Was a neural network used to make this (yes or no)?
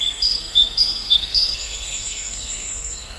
yes